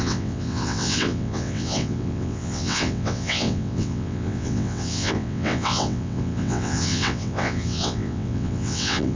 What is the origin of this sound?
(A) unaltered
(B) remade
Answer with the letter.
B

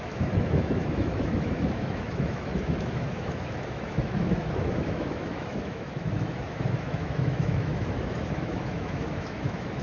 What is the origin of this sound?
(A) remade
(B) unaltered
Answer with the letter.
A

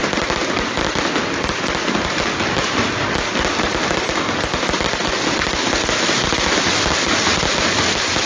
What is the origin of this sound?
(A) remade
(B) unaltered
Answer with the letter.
B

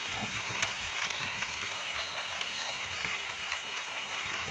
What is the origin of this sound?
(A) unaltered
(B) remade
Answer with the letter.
B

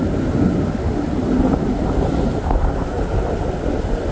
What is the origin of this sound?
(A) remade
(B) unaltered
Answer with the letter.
B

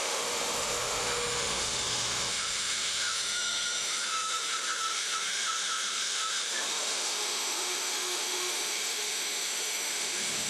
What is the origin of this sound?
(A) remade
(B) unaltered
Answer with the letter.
A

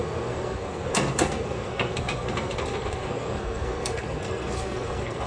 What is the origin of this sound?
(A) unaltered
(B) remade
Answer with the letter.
B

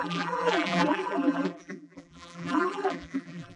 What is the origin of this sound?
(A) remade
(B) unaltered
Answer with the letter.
A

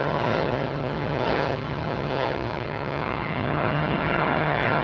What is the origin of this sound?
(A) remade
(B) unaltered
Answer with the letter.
A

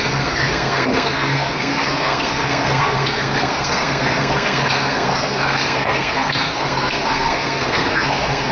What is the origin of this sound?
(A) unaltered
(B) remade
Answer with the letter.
B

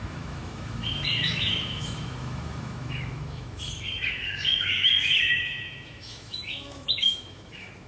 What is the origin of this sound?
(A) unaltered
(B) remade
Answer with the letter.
B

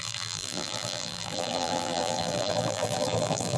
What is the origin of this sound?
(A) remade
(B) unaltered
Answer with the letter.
A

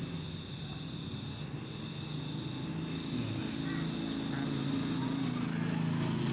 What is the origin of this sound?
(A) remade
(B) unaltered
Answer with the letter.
B